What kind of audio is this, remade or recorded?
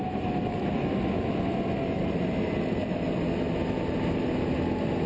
recorded